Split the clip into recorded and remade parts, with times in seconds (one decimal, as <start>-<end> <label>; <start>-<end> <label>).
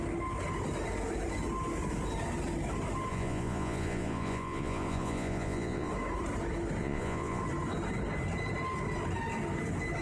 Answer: 0.0-3.1 recorded; 3.1-5.9 remade; 5.9-6.8 recorded; 6.8-7.4 remade; 7.4-10.0 recorded